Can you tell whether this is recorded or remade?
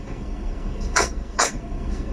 remade